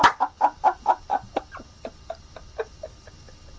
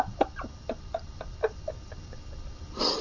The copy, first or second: second